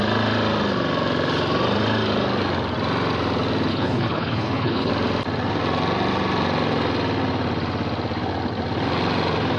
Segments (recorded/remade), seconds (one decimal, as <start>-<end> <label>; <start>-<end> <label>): 0.0-3.7 recorded; 3.7-4.9 remade; 4.9-9.6 recorded